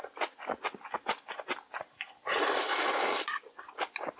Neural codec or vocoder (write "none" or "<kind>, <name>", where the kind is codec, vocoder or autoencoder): vocoder, BigVGAN v2